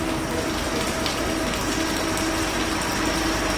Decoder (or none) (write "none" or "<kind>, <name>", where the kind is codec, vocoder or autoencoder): none